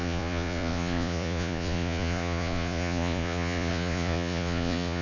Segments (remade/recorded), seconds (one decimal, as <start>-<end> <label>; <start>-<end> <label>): 0.0-5.0 remade